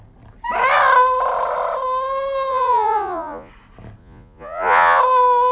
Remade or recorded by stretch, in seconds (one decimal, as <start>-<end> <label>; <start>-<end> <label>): 0.0-2.5 recorded; 2.5-3.5 remade; 3.5-4.0 recorded; 4.0-5.0 remade; 5.0-5.5 recorded